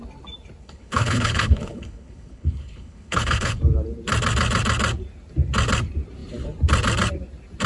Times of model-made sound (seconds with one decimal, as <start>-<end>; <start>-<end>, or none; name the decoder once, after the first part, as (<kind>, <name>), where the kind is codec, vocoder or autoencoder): 0.6-3.6 (codec, HILCodec)